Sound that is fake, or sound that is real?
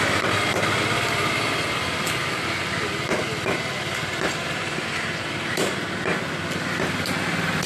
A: real